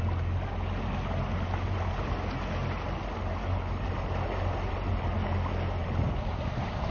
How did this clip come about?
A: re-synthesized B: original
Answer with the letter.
B